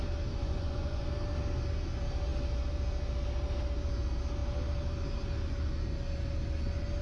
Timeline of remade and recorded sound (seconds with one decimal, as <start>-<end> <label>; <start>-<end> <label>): 0.0-0.4 recorded; 0.4-1.1 remade; 1.1-7.0 recorded